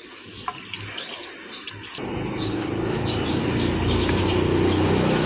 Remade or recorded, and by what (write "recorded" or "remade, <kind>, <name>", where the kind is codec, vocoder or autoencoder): recorded